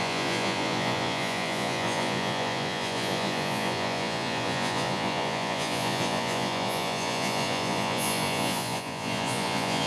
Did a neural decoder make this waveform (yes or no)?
yes